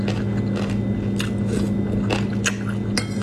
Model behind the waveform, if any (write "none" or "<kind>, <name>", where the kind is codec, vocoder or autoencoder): none